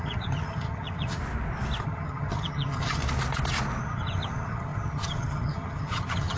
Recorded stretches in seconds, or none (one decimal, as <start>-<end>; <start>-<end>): 1.2-1.8; 3.0-3.8